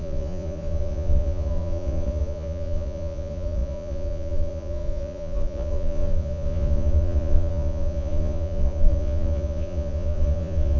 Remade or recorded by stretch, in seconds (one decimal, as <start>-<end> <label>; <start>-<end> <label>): 0.0-10.8 remade